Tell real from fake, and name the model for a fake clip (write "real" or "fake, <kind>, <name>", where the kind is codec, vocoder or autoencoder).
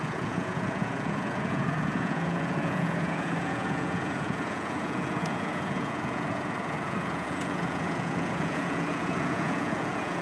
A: fake, vocoder, Vocos